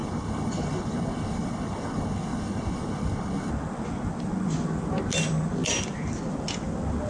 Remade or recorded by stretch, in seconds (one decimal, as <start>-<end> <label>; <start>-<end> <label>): 0.0-3.5 remade; 3.5-7.1 recorded